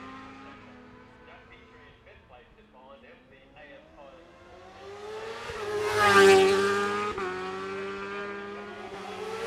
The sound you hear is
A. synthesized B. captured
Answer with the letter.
B